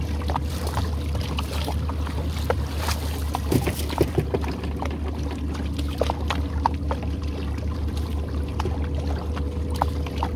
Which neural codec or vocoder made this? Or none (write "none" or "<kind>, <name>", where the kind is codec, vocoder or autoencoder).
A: none